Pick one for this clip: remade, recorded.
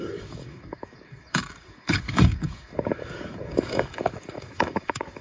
remade